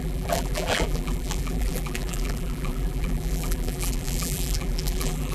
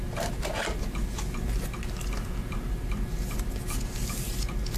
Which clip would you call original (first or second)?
second